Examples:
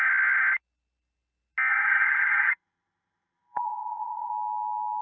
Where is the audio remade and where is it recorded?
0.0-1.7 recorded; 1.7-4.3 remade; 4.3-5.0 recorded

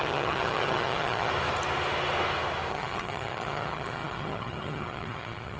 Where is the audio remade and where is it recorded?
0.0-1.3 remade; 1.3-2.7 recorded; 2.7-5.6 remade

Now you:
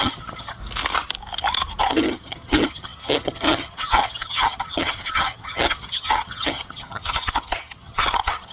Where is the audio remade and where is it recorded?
0.0-0.6 remade; 0.6-1.8 recorded; 1.8-8.5 remade